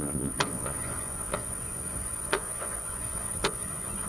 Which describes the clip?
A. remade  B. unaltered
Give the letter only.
A